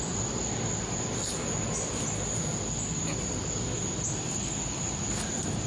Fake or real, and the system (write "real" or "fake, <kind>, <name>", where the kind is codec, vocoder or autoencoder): real